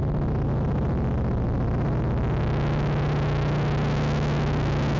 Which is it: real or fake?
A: real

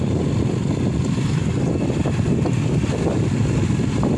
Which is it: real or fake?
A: real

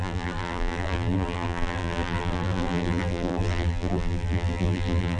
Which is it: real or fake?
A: fake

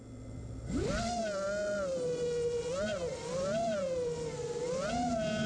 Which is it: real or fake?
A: real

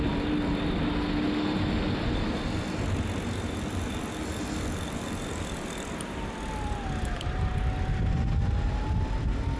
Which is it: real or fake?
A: real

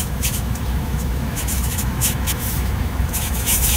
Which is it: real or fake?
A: fake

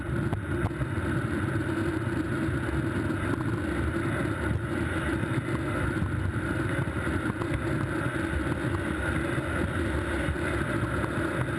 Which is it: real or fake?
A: real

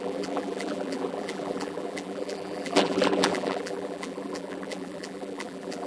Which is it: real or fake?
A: fake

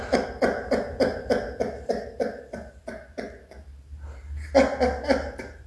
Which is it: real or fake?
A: real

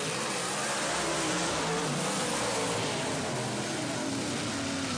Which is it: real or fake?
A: real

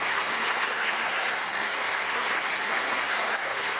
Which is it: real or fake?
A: fake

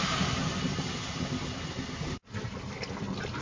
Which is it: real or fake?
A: real